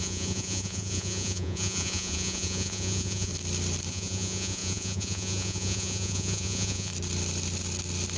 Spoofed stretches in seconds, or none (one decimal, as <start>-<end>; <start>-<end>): 0.0-3.3; 3.9-6.9